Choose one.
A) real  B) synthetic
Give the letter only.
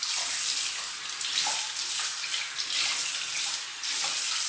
A